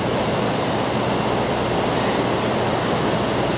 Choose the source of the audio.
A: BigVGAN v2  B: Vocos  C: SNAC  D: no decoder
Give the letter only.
D